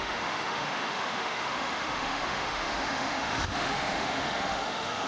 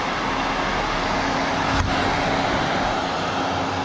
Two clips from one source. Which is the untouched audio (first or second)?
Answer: second